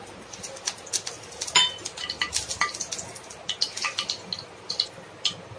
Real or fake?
real